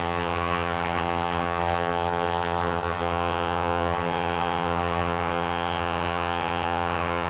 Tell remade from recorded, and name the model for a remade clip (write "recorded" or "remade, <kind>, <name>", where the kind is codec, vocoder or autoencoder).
remade, vocoder, HiFi-GAN